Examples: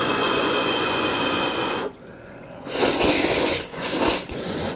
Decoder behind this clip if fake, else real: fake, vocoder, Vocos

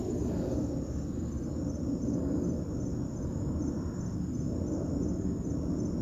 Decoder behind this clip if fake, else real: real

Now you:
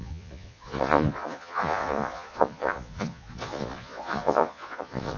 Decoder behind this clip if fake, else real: fake, vocoder, Vocos